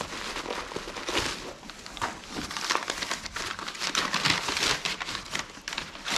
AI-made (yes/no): no